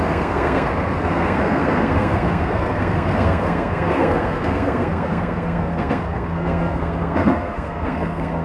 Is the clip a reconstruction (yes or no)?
yes